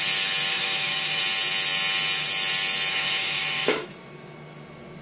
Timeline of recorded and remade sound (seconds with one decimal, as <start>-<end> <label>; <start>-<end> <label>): 0.0-0.5 recorded; 0.5-1.2 remade; 1.2-2.9 recorded; 2.9-3.9 remade; 3.9-5.0 recorded